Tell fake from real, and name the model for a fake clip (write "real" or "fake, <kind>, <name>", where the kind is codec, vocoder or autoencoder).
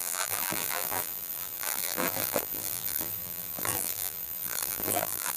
fake, vocoder, BigVGAN v2